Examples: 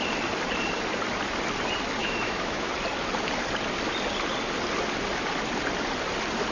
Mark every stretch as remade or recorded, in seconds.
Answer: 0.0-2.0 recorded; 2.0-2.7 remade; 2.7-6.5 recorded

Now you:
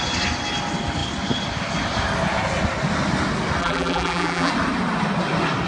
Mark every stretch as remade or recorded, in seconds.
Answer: 0.0-3.6 recorded; 3.6-4.5 remade; 4.5-5.7 recorded

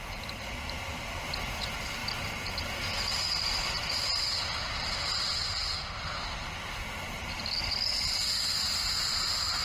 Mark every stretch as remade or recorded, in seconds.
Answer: 0.0-3.8 recorded; 3.8-5.4 remade; 5.4-9.6 recorded

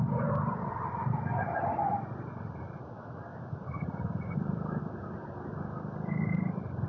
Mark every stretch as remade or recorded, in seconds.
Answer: 0.0-3.3 recorded; 3.3-4.8 remade; 4.8-6.9 recorded